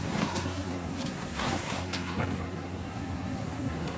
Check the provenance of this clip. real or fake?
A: fake